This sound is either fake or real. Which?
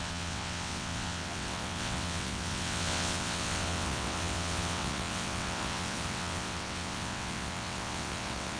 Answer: fake